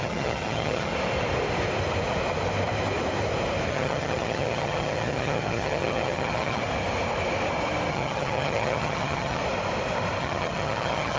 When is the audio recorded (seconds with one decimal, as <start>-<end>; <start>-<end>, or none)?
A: 0.9-3.7; 6.6-7.9; 9.4-10.2